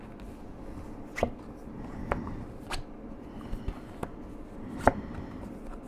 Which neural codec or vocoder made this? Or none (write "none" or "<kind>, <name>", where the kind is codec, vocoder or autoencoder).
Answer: none